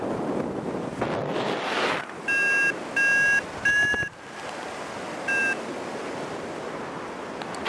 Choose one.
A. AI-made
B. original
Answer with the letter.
B